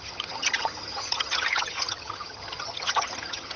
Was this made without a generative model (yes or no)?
no